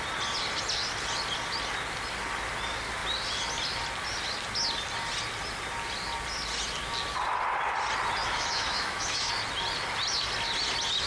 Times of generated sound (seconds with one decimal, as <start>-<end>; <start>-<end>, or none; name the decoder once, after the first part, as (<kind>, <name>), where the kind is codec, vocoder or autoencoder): 8.2-9.3 (autoencoder, DAC-VAE)